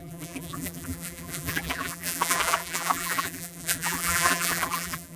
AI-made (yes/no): yes